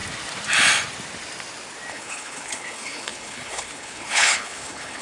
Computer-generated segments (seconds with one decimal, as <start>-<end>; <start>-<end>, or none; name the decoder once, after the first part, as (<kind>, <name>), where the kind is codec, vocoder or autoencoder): 1.9-5.0 (codec, HILCodec)